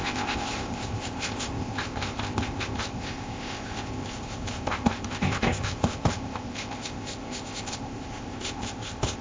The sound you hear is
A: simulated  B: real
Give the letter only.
A